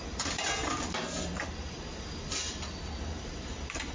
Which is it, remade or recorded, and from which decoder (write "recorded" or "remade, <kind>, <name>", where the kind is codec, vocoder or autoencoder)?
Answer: recorded